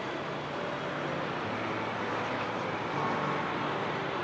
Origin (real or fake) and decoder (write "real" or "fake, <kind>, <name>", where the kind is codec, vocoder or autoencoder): real